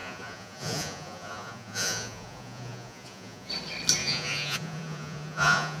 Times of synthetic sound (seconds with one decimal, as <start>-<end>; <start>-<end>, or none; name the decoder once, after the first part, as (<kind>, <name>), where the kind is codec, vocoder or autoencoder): 0.0-3.5 (vocoder, Vocos); 4.0-5.8